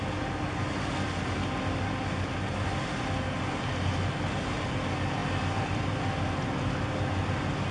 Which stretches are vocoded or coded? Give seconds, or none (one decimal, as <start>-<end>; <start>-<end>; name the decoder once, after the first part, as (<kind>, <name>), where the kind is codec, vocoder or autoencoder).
none